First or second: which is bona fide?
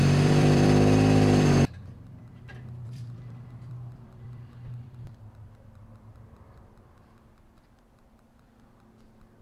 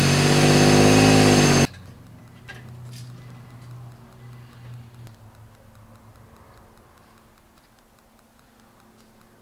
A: second